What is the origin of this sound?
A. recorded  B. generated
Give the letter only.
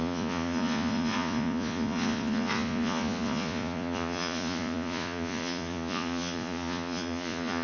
B